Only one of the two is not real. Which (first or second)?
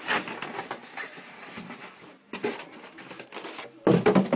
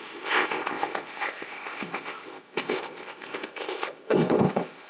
second